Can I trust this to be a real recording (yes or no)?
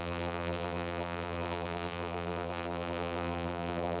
no